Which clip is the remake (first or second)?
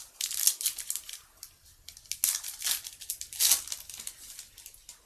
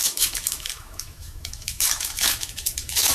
second